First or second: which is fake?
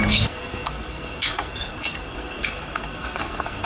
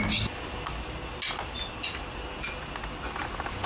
first